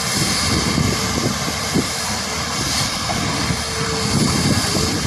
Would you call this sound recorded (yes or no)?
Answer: no